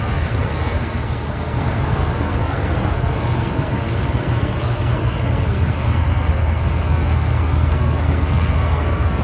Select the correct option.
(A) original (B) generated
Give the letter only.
B